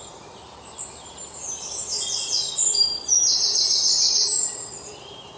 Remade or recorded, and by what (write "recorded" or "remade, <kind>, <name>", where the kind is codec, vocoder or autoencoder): remade, vocoder, BigVGAN v2